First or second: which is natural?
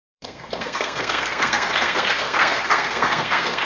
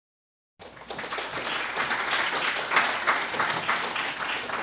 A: second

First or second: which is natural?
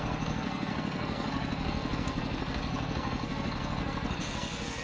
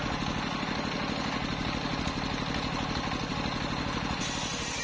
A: second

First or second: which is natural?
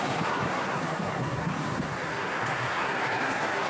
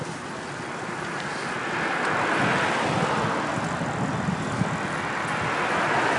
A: second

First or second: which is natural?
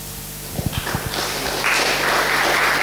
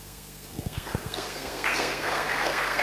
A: first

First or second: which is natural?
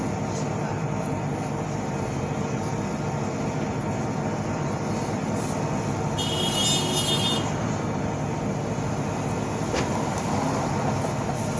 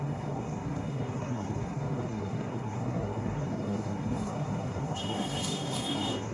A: first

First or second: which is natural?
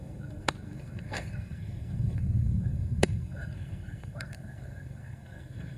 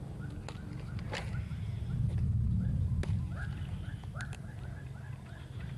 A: second